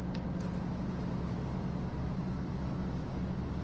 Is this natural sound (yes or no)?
yes